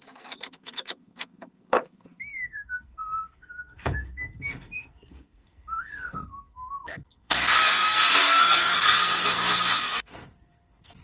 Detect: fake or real fake